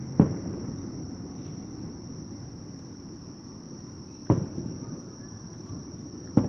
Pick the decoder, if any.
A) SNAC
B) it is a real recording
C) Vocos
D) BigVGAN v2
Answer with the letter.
B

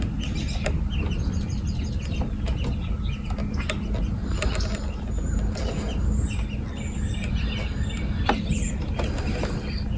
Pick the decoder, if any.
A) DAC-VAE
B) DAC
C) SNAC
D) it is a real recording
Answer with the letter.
D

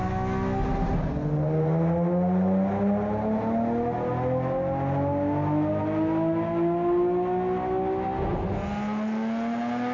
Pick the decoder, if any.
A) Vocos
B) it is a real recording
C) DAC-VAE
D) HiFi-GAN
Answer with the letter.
B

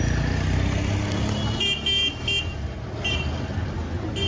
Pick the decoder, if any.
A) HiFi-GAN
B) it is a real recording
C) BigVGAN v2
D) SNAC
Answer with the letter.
B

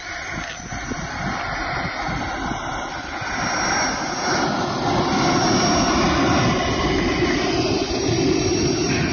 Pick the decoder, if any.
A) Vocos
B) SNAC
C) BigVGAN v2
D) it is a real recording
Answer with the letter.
D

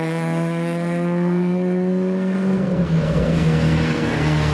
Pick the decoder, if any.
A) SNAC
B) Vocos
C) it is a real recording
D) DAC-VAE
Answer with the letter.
A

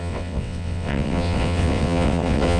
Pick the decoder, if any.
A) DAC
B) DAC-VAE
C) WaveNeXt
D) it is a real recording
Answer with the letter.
C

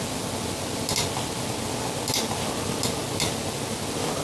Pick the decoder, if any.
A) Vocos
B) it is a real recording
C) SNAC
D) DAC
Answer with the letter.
B